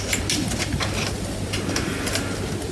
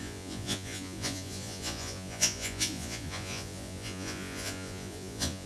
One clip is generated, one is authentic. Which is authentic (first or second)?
first